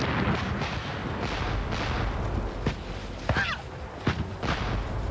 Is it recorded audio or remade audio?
recorded